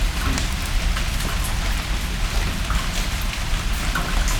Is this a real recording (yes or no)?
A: yes